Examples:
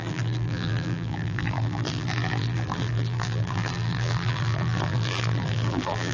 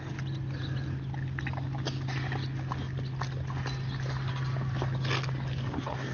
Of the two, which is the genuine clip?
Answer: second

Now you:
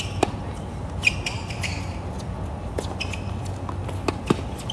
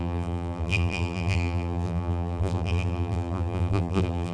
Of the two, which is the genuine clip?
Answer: first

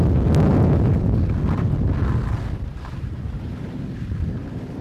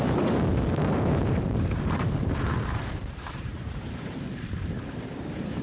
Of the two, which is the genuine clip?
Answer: first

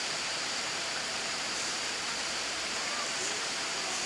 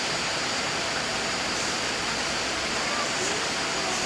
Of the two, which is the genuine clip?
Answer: second